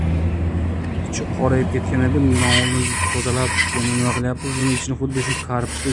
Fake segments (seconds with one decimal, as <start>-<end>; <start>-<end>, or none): none